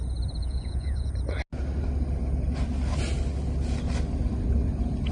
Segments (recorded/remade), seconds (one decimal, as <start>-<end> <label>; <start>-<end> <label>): 0.0-0.4 recorded; 0.4-1.1 remade; 1.1-5.1 recorded